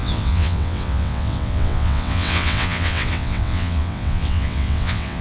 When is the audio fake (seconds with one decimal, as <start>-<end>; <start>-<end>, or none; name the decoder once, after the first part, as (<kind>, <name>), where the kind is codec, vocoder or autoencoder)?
0.0-5.2 (vocoder, WaveNeXt)